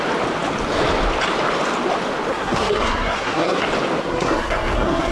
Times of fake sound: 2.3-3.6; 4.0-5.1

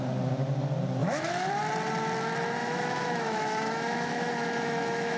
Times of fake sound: 1.0-1.5; 2.6-5.2

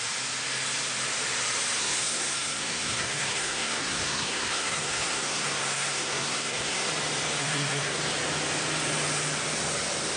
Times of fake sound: 1.8-6.9; 7.4-8.0

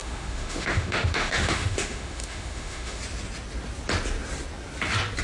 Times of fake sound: 0.0-3.0